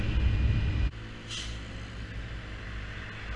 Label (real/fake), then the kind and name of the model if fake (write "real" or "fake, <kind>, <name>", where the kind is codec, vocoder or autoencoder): real